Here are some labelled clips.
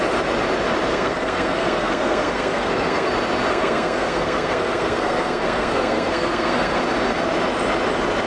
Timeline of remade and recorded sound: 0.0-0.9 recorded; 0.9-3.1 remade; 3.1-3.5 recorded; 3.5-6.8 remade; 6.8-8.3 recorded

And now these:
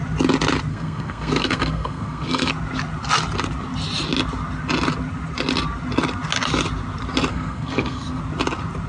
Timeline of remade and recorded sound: 0.0-0.7 recorded; 0.7-2.5 remade; 2.5-7.3 recorded; 7.3-8.2 remade; 8.2-8.9 recorded

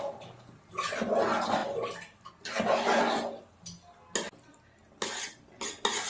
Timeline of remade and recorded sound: 0.0-6.1 recorded

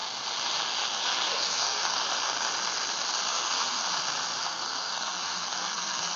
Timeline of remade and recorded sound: 0.0-0.9 recorded; 0.9-1.9 remade; 1.9-3.3 recorded; 3.3-3.8 remade; 3.8-4.4 recorded; 4.4-6.2 remade

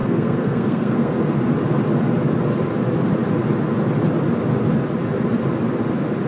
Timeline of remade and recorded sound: 0.0-1.1 remade; 1.1-6.3 recorded

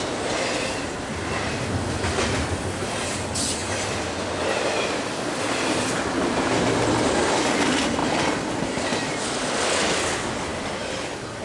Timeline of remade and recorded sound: 0.0-11.4 recorded

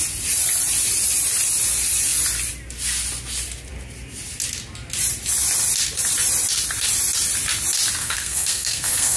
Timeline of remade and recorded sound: 0.0-8.0 recorded; 8.0-9.2 remade